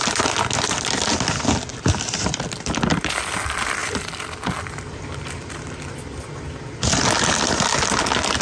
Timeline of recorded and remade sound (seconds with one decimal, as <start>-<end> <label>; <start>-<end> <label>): 0.0-1.7 recorded; 1.7-3.2 remade; 3.2-3.8 recorded; 3.8-5.8 remade; 5.8-8.4 recorded